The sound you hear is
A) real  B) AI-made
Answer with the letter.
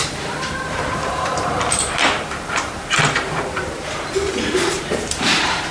B